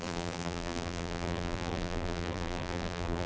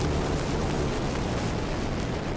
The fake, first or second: first